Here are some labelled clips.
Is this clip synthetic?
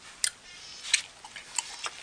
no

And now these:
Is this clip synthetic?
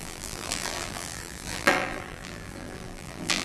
yes